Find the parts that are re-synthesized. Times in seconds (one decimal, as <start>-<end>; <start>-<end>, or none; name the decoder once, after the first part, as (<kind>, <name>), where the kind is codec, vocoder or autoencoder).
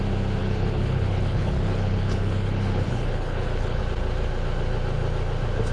0.4-3.8 (codec, HILCodec)